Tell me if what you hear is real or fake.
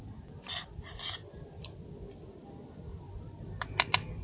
real